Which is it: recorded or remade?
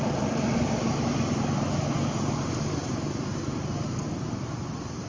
recorded